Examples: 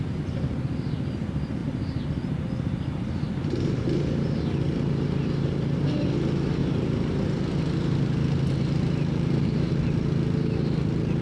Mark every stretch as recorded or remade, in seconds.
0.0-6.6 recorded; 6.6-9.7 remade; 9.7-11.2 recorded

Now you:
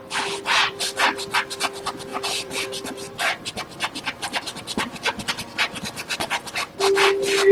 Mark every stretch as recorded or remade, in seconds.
0.0-0.5 recorded; 0.5-1.2 remade; 1.2-2.1 recorded; 2.1-5.3 remade; 5.3-7.5 recorded

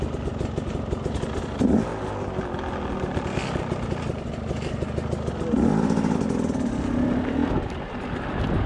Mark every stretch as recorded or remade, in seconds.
0.0-8.7 recorded

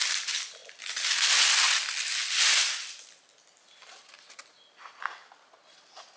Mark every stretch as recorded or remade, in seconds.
0.0-0.6 recorded; 0.6-1.1 remade; 1.1-6.2 recorded

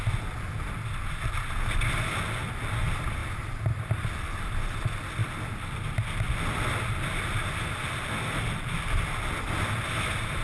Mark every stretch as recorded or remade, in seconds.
0.0-3.2 recorded; 3.2-4.4 remade; 4.4-6.8 recorded; 6.8-7.4 remade; 7.4-10.4 recorded

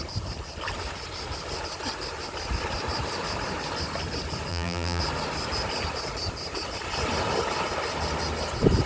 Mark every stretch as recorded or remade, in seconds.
0.0-4.5 recorded; 4.5-5.0 remade; 5.0-8.9 recorded

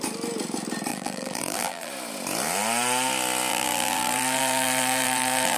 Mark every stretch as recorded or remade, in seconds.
0.0-0.9 recorded; 0.9-1.9 remade; 1.9-3.5 recorded; 3.5-5.6 remade